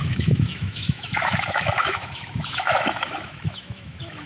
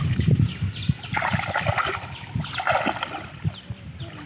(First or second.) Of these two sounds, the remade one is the first